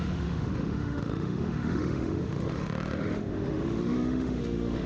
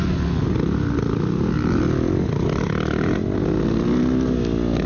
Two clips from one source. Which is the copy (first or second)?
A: first